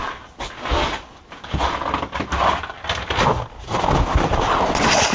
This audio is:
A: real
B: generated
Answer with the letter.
A